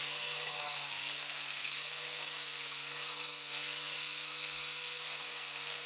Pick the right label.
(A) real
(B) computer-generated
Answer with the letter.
B